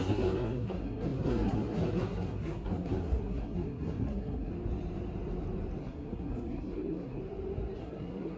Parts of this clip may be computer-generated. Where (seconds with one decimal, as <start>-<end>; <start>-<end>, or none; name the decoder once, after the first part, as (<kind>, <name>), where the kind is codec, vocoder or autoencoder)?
0.0-4.5 (codec, SNAC); 5.8-7.2; 7.8-8.4